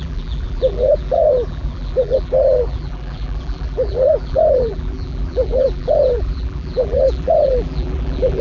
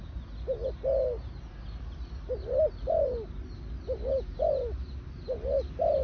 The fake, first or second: first